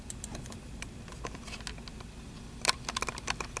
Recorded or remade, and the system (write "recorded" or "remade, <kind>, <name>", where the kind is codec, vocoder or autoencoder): recorded